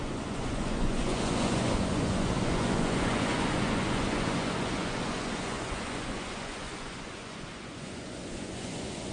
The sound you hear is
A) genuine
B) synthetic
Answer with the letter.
B